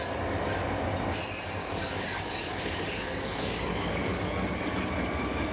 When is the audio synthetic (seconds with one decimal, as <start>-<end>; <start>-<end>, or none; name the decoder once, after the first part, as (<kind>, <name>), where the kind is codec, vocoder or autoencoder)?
1.6-4.9 (codec, DAC)